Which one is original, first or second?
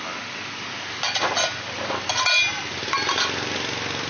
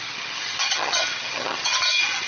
first